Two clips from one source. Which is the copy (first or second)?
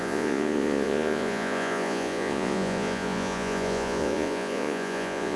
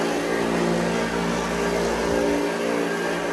first